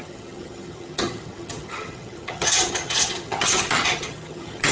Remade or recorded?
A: remade